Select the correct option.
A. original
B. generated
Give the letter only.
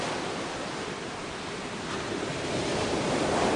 B